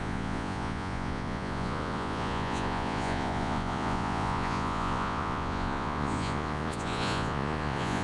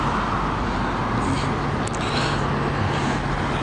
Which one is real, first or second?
second